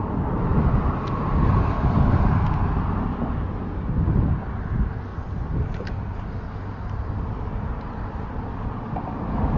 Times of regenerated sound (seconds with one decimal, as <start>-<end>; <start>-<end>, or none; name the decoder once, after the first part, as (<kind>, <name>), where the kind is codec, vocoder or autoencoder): none